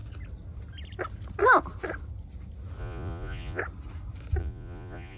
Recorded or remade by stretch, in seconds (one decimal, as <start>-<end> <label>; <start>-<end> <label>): 0.0-2.8 recorded; 2.8-3.6 remade; 3.6-4.4 recorded; 4.4-5.2 remade